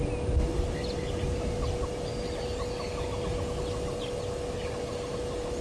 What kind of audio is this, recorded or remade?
recorded